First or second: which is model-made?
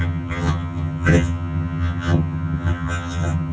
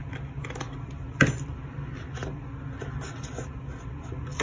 first